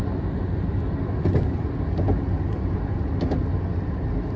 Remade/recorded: recorded